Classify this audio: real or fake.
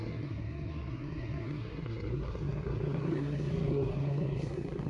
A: fake